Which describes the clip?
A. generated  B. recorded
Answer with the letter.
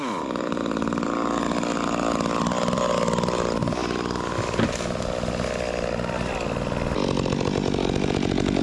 B